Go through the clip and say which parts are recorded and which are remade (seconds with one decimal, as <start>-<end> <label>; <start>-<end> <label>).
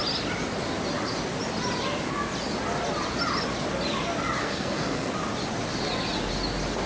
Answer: 0.0-4.4 recorded; 4.4-5.1 remade; 5.1-6.9 recorded